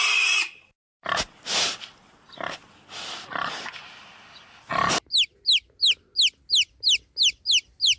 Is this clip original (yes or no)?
yes